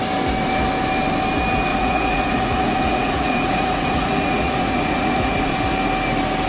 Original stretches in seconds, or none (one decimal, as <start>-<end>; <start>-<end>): 0.0-1.7; 5.6-6.5